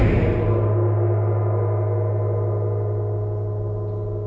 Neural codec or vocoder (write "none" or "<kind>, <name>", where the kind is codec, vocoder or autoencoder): none